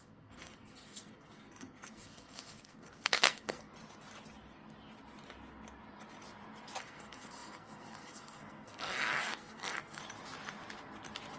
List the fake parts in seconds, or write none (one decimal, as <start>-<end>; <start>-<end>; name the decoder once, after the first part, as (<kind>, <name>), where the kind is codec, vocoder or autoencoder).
0.0-3.7 (codec, SNAC); 6.8-10.0